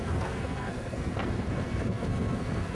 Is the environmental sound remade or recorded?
remade